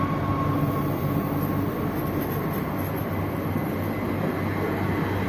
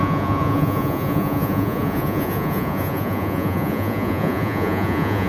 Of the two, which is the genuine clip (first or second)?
first